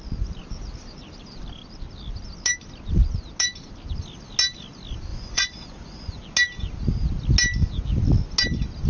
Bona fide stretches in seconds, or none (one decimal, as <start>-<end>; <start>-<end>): 0.0-5.1; 6.2-8.9